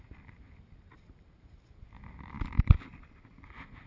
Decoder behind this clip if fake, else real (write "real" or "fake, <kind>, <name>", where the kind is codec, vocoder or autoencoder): real